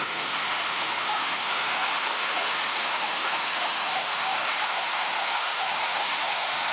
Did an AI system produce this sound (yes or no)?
yes